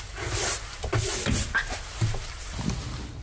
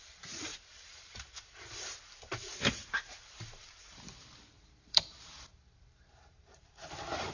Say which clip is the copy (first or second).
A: second